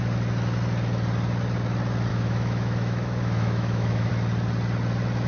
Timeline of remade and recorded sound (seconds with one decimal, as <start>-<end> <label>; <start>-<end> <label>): 0.0-2.1 recorded; 2.1-4.1 remade; 4.1-5.3 recorded